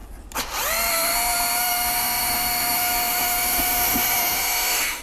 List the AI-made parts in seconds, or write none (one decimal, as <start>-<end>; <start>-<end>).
0.9-5.0